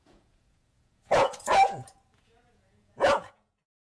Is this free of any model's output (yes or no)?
no